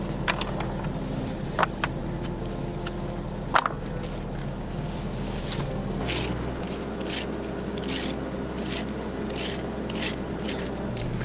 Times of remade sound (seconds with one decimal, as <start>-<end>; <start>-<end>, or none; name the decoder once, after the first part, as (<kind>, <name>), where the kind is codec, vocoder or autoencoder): 4.4-5.4 (codec, DAC)